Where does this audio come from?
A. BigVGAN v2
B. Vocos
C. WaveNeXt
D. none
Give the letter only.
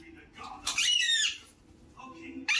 D